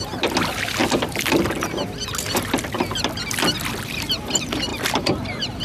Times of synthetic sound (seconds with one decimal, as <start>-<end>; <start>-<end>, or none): 4.7-5.6